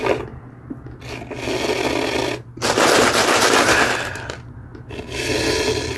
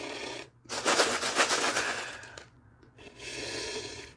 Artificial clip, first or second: second